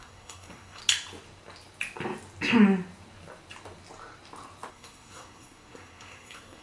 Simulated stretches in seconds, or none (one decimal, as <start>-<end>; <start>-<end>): 0.0-0.8; 4.7-6.6